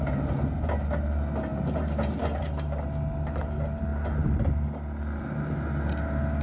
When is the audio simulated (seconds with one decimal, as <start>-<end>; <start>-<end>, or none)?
none